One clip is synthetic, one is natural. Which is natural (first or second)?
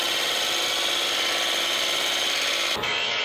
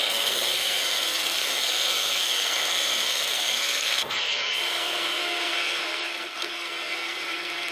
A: first